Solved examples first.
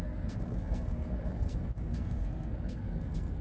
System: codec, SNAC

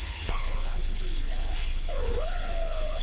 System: codec, HILCodec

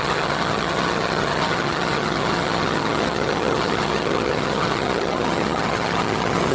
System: vocoder, HiFi-GAN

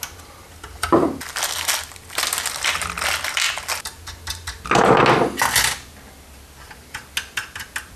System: none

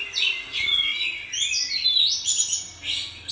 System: none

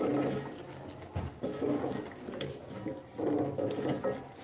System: none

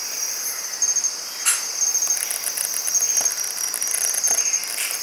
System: vocoder, BigVGAN v2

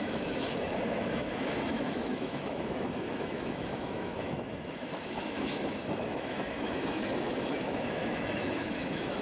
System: autoencoder, DAC-VAE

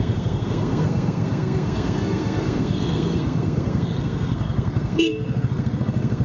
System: codec, SNAC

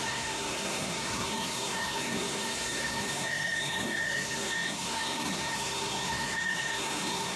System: codec, SNAC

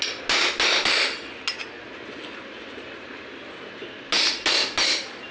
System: none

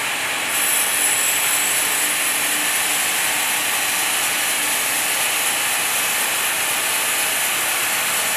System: none